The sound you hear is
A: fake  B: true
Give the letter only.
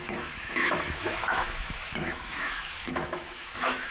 A